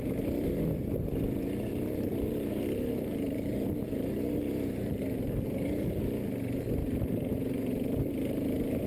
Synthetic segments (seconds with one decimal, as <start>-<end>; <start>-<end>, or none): 1.7-6.0; 6.8-7.7